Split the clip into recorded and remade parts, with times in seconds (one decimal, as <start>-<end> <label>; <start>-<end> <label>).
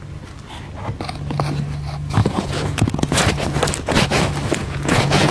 0.0-2.2 recorded; 2.2-3.2 remade; 3.2-4.6 recorded; 4.6-5.3 remade